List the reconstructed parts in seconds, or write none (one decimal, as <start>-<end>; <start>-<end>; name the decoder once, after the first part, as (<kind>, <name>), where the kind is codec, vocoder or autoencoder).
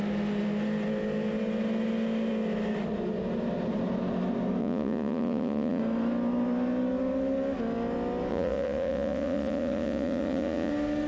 4.6-5.8 (vocoder, Vocos); 8.3-10.7